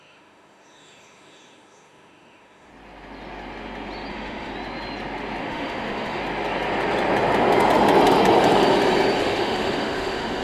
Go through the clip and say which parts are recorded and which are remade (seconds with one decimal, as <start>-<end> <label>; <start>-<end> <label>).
0.0-2.7 remade; 2.7-4.1 recorded; 4.1-4.5 remade; 4.5-5.4 recorded; 5.4-6.2 remade; 6.2-9.2 recorded; 9.2-10.4 remade